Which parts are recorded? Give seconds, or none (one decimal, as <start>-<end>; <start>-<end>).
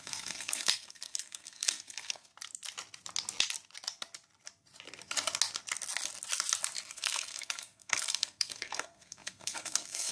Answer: 2.3-6.9